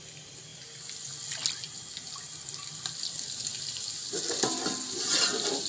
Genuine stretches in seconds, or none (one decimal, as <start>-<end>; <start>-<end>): 0.0-5.7